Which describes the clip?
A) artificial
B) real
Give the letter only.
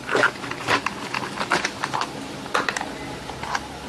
B